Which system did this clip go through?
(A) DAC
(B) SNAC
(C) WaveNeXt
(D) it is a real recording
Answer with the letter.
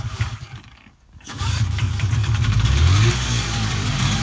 A